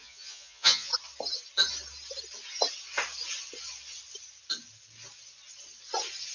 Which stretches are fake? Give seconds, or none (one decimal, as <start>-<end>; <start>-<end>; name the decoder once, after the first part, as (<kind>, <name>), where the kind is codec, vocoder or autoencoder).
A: 0.0-0.9 (vocoder, Vocos)